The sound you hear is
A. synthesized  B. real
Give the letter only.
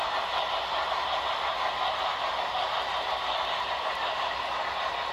B